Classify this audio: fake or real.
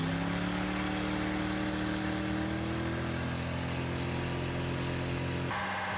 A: real